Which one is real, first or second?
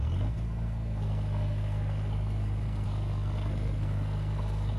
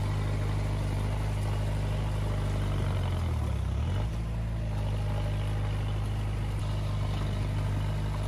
second